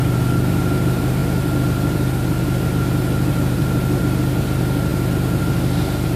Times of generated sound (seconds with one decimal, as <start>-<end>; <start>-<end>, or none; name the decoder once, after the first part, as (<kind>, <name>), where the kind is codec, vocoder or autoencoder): none